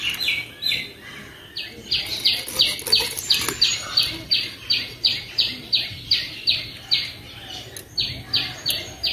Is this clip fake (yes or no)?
no